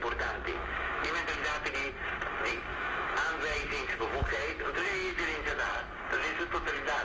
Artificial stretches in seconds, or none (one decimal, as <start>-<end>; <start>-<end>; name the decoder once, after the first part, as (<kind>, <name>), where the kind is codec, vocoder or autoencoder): 0.0-1.1 (autoencoder, DAC-VAE); 2.7-5.5